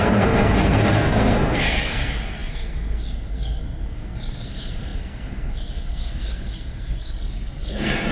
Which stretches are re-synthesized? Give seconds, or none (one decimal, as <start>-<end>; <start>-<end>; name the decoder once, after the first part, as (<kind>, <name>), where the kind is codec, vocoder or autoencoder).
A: 0.0-8.1 (codec, SNAC)